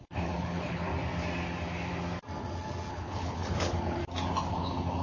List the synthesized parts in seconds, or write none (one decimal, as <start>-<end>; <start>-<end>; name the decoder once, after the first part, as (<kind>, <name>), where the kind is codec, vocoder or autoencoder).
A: 0.0-0.9 (codec, HILCodec); 2.9-4.0; 4.5-5.0